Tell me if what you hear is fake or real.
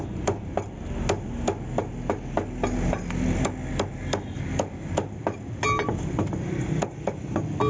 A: real